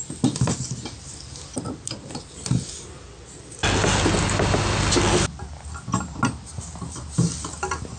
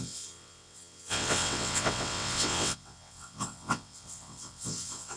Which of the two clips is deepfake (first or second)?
second